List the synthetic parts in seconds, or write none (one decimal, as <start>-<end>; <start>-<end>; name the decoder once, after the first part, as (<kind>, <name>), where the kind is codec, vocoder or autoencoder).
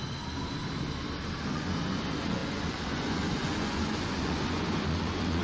1.5-5.4 (vocoder, Vocos)